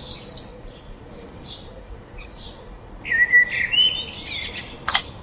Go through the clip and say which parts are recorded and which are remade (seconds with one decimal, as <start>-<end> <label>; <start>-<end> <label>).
0.0-0.5 recorded; 0.5-1.1 remade; 1.1-1.7 recorded; 1.7-3.0 remade; 3.0-5.2 recorded